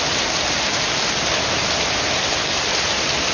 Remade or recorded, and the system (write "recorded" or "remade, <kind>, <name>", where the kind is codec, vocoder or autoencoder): recorded